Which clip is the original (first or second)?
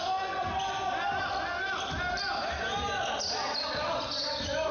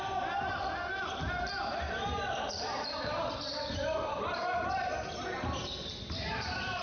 first